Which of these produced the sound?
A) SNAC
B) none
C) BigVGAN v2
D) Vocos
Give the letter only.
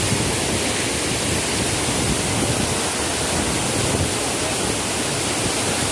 B